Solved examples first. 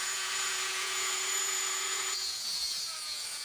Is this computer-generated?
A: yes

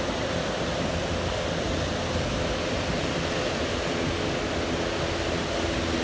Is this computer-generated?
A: no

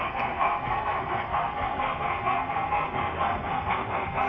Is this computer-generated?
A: yes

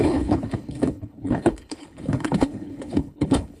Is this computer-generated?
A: yes